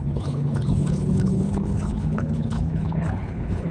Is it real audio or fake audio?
fake